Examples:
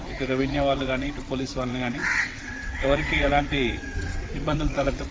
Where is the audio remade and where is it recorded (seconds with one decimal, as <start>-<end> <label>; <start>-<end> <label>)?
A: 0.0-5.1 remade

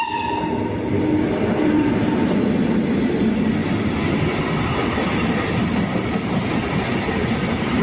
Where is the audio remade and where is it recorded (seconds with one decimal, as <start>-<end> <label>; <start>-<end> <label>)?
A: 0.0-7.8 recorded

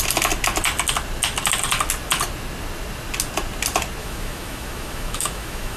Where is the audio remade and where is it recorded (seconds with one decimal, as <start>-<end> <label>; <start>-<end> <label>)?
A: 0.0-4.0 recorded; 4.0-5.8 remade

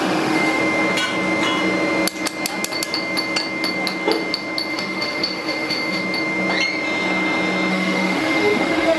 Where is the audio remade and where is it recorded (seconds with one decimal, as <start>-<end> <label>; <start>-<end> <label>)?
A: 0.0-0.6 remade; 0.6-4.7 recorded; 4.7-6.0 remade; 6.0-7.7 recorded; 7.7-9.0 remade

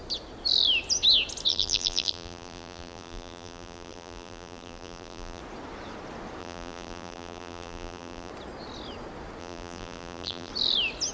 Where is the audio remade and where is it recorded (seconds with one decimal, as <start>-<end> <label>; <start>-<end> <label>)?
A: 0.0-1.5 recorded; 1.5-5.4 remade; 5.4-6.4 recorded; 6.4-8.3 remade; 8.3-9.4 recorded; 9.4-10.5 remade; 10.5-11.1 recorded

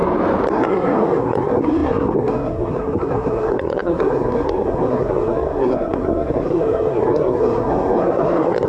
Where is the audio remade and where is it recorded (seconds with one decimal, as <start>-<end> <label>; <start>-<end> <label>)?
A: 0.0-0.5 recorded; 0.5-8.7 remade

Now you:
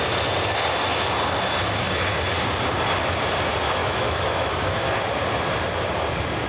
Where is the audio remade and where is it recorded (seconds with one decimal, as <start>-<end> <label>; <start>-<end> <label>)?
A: 0.0-3.8 recorded; 3.8-4.9 remade; 4.9-6.5 recorded

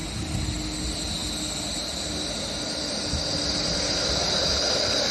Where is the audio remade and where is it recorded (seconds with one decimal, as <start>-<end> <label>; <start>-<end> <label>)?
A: 0.0-5.1 recorded